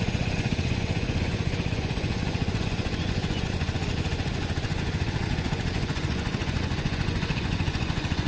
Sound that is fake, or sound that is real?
fake